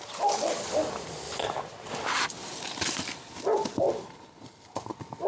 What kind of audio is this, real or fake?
real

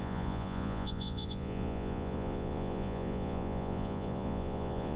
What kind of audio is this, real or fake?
fake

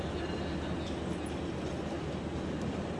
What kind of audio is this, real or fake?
real